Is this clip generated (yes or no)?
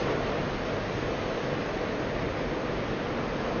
no